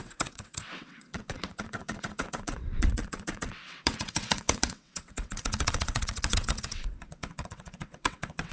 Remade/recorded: remade